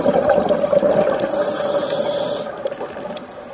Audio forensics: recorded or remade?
remade